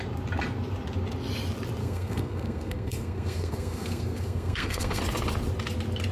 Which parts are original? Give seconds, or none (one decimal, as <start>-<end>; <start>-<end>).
0.0-1.8; 5.0-6.1